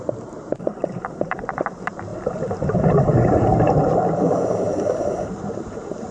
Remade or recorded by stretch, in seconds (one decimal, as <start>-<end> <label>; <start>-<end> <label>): 0.0-2.1 remade; 2.1-2.9 recorded; 2.9-6.1 remade